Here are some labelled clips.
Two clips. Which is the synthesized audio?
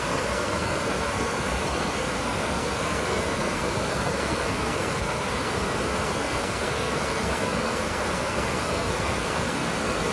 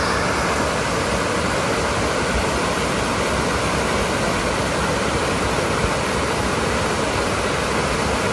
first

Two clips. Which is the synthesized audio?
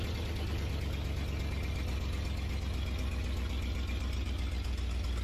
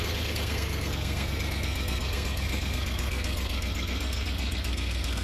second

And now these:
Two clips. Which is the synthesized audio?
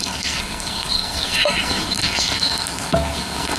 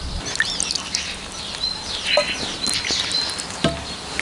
first